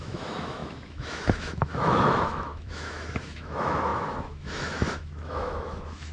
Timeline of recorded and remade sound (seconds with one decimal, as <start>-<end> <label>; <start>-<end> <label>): 0.0-6.1 remade